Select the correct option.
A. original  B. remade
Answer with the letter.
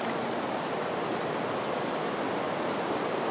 A